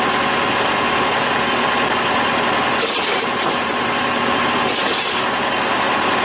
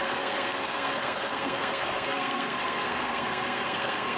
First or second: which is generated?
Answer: second